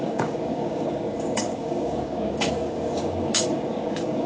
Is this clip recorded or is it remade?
remade